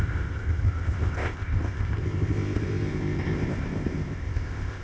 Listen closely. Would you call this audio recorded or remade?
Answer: remade